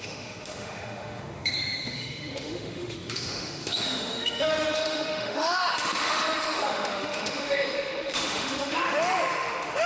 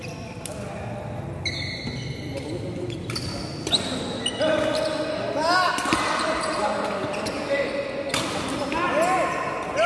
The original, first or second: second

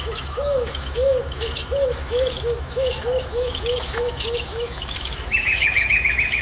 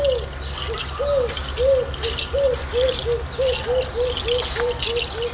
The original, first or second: second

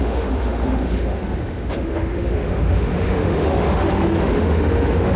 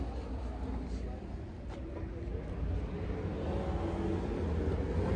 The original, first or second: second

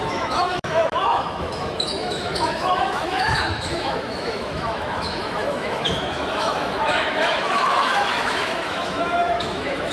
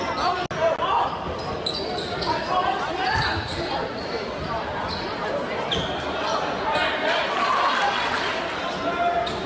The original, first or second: second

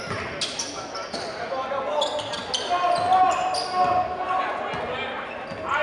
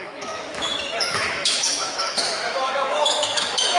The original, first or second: first